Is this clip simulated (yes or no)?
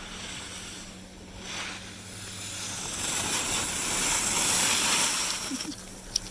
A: no